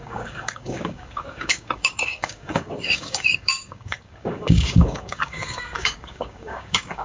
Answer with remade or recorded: remade